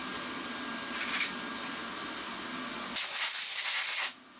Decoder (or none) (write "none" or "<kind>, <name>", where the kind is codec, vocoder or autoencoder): none